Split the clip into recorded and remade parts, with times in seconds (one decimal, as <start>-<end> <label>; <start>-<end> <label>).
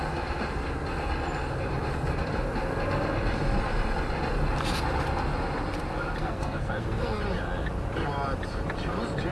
0.0-6.2 recorded; 6.2-7.2 remade; 7.2-9.3 recorded